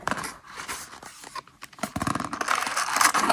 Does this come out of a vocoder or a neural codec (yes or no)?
yes